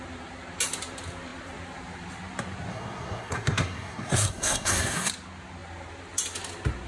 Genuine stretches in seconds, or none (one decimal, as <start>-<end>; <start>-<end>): 0.0-2.7; 5.1-6.9